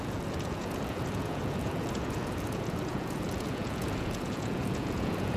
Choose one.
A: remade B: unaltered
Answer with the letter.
A